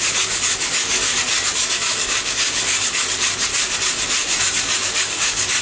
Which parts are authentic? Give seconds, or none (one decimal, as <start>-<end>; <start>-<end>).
3.5-4.4

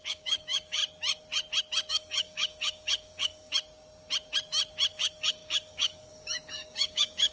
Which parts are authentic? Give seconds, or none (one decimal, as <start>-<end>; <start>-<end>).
0.8-1.9; 3.5-4.9

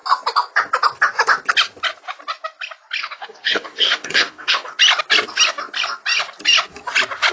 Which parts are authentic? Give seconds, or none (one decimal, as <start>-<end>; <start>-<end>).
0.0-3.0; 4.7-7.3